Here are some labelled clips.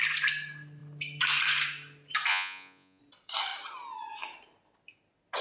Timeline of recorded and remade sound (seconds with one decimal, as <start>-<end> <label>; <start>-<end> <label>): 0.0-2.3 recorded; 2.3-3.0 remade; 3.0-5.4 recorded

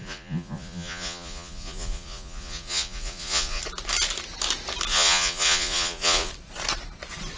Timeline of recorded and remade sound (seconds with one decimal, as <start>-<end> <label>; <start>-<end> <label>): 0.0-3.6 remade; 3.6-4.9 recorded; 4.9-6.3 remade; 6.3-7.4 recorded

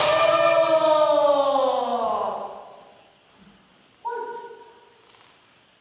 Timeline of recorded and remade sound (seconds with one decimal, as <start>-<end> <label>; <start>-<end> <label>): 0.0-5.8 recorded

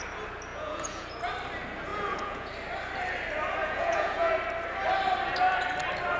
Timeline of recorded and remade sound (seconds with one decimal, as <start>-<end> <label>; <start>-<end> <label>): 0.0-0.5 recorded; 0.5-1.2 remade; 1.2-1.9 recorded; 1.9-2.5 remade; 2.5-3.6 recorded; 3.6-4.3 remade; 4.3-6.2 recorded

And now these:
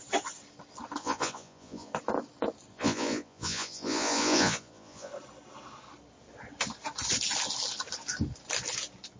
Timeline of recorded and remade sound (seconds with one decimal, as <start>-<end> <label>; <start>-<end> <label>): 0.0-1.0 recorded; 1.0-1.9 remade; 1.9-2.7 recorded; 2.7-5.1 remade; 5.1-9.2 recorded

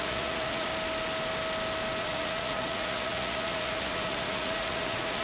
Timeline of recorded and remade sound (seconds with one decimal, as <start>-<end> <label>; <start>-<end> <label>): 0.0-0.7 remade; 0.7-2.0 recorded; 2.0-5.2 remade